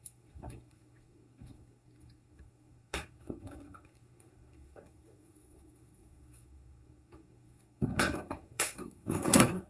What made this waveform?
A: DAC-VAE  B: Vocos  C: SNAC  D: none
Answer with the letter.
C